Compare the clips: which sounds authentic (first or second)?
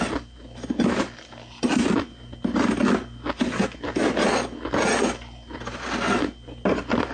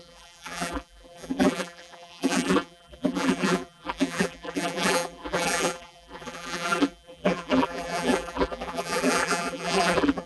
first